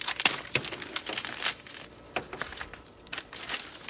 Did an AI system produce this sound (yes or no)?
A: no